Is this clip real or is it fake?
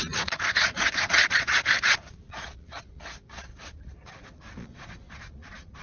fake